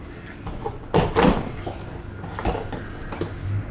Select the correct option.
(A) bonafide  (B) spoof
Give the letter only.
A